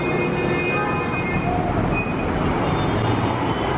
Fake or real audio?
real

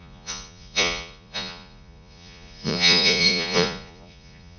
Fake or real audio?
fake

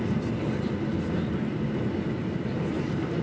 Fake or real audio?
real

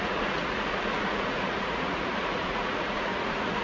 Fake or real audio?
fake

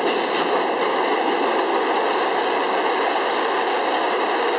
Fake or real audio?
real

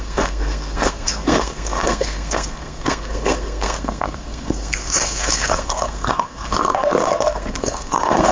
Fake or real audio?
fake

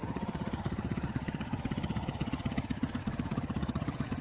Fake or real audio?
fake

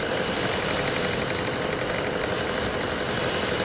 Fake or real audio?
real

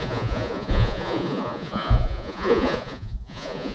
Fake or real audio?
fake